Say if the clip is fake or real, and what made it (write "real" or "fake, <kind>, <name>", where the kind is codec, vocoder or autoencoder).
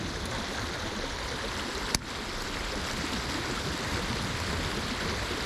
real